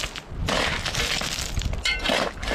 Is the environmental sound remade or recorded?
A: recorded